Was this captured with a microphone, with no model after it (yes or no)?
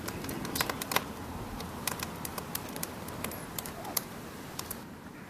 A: no